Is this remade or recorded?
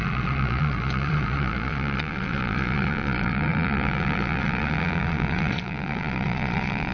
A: remade